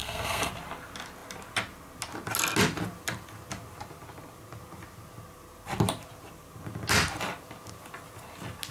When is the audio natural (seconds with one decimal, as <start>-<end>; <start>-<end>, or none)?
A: 0.5-8.7